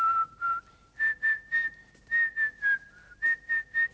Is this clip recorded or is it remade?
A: recorded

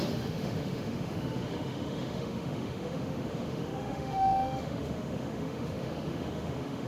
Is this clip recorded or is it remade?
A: remade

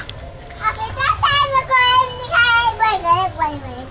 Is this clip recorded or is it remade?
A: recorded